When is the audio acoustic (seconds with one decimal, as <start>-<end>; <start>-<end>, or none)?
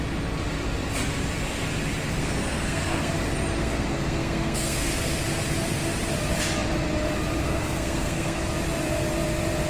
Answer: 0.0-2.2; 3.1-3.6; 5.2-7.4; 8.4-9.7